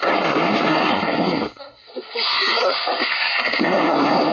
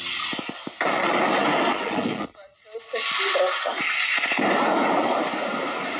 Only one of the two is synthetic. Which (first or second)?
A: first